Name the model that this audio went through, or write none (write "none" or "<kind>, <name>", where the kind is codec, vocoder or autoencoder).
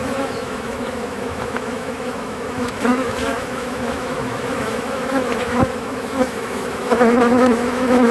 autoencoder, DAC-VAE